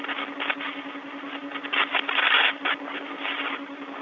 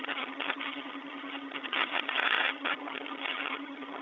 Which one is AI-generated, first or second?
second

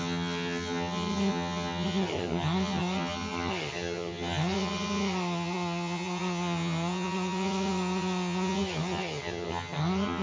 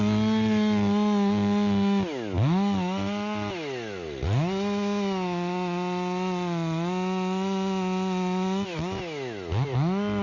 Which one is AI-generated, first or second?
first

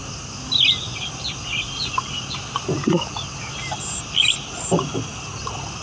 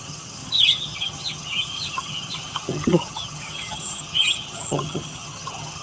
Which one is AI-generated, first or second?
second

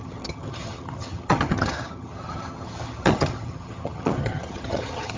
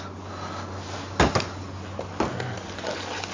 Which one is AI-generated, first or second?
first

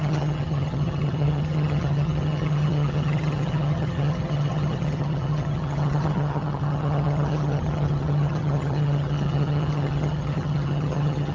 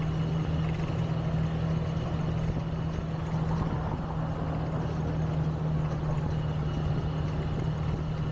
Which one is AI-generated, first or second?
first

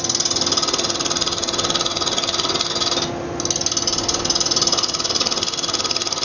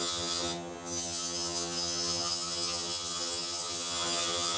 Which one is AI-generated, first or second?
second